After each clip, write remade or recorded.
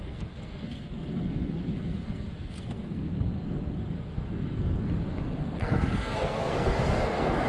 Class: remade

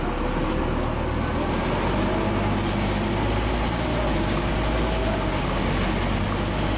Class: recorded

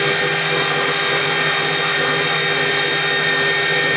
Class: recorded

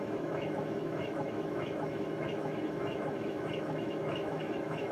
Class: remade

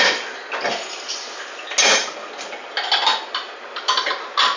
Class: recorded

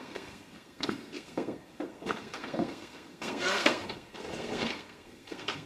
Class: remade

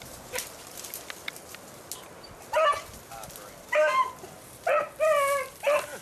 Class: recorded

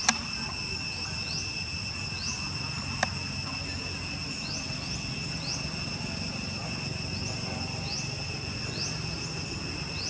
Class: recorded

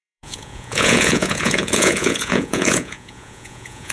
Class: remade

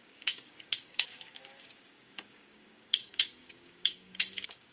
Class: remade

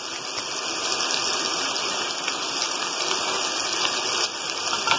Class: recorded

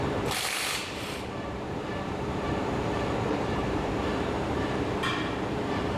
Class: remade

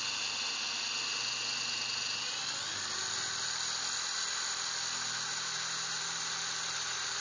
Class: recorded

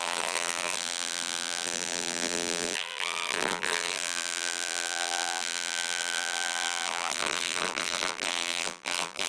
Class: remade